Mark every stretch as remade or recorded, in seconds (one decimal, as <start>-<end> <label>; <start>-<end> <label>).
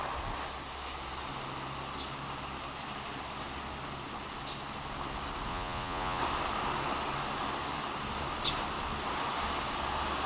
0.0-5.5 recorded; 5.5-6.2 remade; 6.2-10.3 recorded